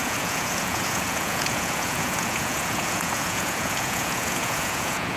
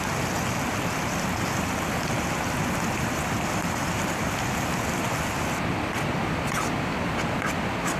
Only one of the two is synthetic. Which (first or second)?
first